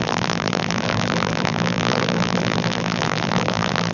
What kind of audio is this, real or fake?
fake